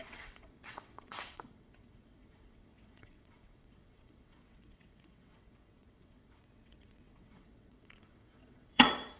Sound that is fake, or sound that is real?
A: fake